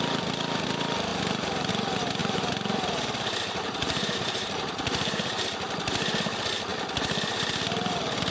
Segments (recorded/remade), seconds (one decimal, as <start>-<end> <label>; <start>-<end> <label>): 0.0-1.1 recorded; 1.1-1.7 remade; 1.7-2.2 recorded; 2.2-5.4 remade; 5.4-8.3 recorded